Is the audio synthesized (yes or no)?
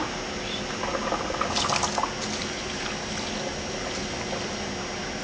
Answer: no